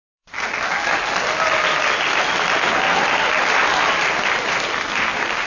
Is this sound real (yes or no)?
yes